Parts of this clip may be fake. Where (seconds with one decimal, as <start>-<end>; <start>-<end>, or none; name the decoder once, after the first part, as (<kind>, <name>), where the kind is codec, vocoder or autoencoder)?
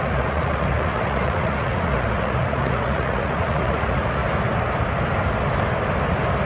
0.0-4.2 (vocoder, Vocos)